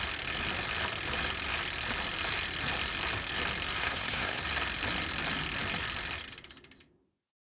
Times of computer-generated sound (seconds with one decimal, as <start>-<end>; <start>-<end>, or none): 3.8-4.4